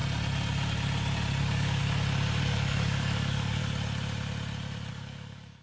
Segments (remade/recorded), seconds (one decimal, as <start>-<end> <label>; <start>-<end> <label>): 0.0-1.4 recorded; 1.4-1.8 remade; 1.8-2.4 recorded; 2.4-3.6 remade; 3.6-4.9 recorded; 4.9-5.6 remade